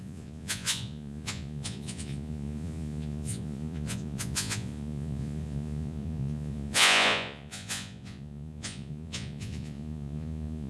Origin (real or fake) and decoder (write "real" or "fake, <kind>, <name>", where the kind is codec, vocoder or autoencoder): fake, vocoder, Vocos